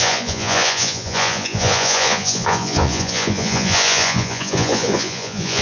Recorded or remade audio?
remade